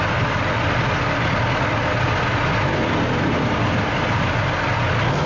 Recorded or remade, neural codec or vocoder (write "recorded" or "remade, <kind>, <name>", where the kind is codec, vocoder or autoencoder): recorded